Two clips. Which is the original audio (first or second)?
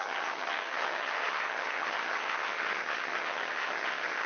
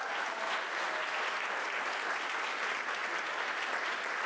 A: second